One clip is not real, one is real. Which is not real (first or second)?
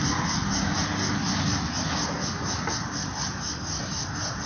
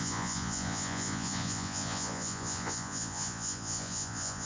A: second